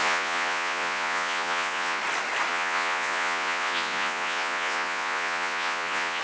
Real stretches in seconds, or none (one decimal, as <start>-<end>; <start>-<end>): 2.0-2.5